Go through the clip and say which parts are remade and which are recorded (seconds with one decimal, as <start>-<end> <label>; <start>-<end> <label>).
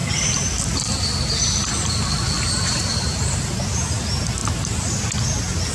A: 0.0-3.4 remade; 3.4-5.7 recorded